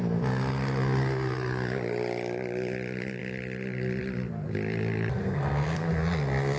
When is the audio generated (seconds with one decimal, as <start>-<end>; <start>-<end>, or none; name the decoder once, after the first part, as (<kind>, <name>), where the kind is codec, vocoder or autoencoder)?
5.2-5.9 (codec, SNAC)